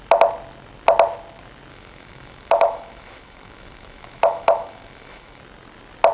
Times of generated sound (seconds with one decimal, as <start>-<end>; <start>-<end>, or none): 1.7-5.4